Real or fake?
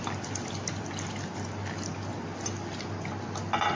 real